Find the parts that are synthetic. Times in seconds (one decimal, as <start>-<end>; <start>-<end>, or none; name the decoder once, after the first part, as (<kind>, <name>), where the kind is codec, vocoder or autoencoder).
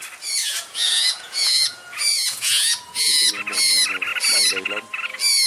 0.4-3.4 (vocoder, Vocos)